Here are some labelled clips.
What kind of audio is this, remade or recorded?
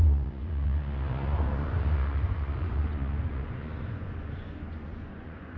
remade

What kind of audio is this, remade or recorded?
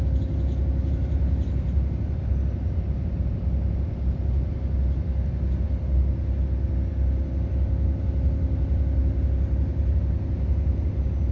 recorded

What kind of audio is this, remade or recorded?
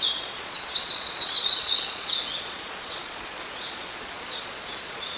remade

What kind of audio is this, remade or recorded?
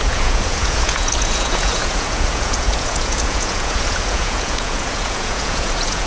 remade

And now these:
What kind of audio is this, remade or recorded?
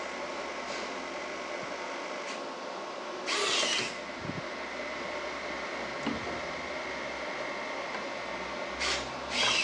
recorded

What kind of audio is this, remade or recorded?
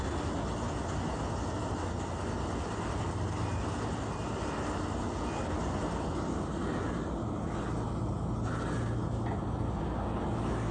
recorded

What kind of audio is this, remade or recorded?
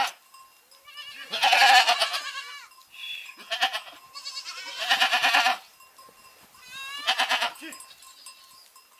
recorded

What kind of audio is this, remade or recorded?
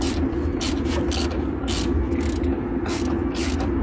recorded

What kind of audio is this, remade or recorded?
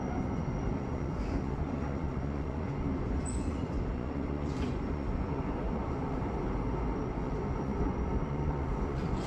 remade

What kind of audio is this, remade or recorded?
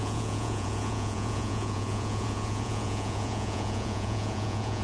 remade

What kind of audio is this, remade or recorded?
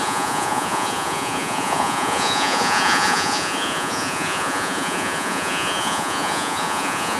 remade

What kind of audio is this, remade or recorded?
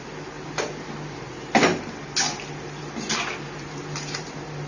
recorded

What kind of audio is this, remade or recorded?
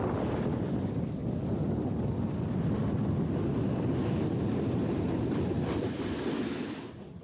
recorded